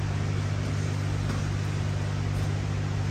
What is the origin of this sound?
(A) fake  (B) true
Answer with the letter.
B